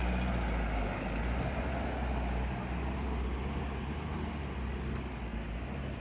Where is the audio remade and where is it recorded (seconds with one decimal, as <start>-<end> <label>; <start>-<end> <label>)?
0.0-6.0 recorded